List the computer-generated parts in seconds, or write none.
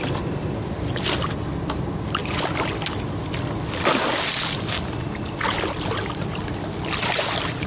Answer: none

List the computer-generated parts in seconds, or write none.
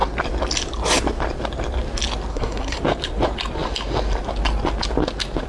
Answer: 2.3-2.8 (codec, SNAC)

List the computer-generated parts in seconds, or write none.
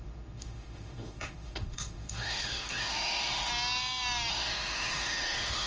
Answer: 0.0-3.5 (autoencoder, DAC-VAE); 4.3-5.7